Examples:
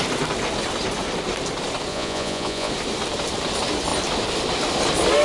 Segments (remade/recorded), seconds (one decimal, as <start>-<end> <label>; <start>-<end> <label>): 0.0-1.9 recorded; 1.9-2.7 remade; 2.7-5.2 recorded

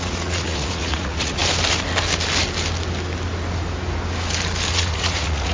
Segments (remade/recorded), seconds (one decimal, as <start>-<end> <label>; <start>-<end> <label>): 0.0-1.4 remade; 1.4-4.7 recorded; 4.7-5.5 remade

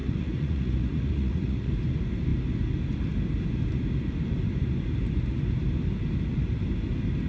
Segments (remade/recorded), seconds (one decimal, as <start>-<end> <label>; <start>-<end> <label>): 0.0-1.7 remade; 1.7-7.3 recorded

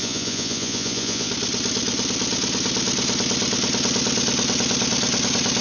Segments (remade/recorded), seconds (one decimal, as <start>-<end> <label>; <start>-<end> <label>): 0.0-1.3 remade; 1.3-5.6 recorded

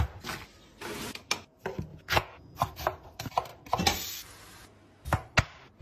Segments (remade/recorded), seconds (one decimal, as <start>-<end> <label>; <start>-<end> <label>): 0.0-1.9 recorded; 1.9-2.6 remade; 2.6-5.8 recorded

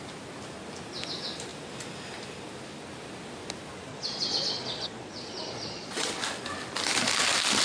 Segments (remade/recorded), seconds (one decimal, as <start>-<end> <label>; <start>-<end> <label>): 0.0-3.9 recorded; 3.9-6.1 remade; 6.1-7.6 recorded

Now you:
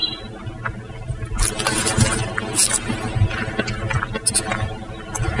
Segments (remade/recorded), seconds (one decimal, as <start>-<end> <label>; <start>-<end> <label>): 0.0-5.4 recorded

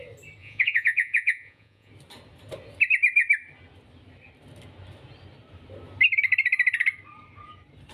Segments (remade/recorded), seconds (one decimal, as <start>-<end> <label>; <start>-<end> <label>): 0.0-0.4 recorded; 0.4-1.9 remade; 1.9-7.9 recorded